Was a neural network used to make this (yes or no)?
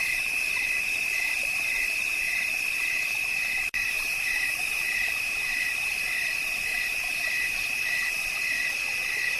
yes